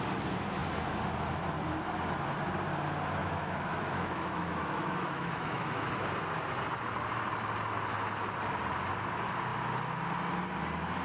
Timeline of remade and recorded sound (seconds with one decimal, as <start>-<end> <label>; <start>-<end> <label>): 0.0-3.2 recorded; 3.2-5.9 remade; 5.9-11.0 recorded